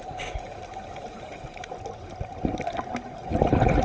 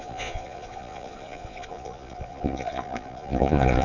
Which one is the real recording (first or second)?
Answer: first